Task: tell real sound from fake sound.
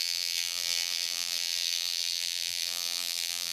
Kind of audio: fake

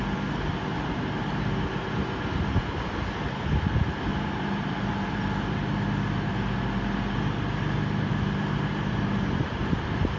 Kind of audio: real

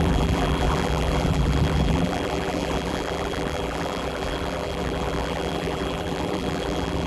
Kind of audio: fake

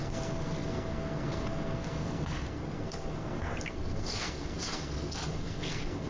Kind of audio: fake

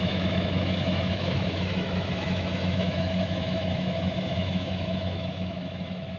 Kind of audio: fake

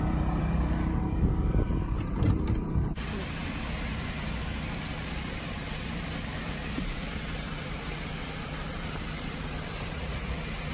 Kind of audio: fake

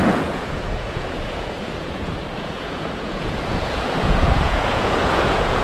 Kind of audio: fake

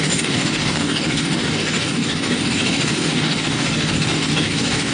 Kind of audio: fake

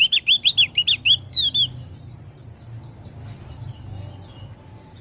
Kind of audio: real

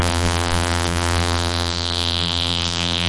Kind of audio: fake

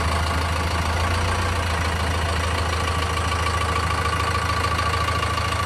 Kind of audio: real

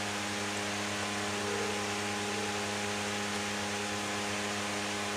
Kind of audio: real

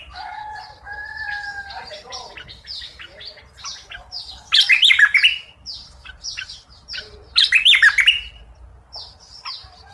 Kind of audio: fake